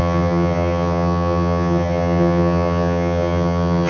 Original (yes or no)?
no